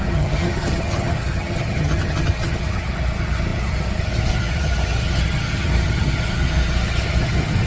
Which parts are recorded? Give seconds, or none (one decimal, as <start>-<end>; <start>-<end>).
none